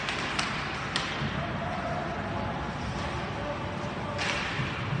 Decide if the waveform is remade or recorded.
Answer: recorded